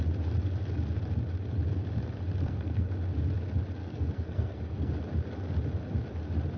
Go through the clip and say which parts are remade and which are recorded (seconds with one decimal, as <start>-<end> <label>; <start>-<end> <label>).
0.0-2.4 recorded; 2.4-2.9 remade; 2.9-3.8 recorded; 3.8-4.9 remade; 4.9-6.6 recorded